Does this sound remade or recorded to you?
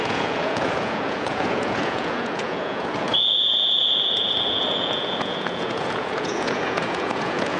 remade